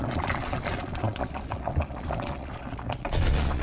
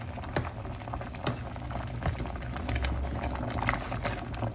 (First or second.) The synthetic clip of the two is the first